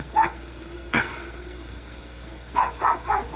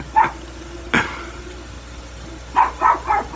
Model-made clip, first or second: first